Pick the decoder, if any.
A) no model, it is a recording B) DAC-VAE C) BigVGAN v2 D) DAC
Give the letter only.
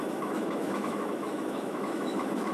B